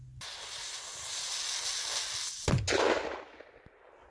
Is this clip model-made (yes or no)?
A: no